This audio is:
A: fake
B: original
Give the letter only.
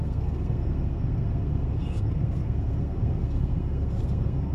A